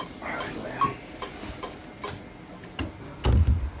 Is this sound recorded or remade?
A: recorded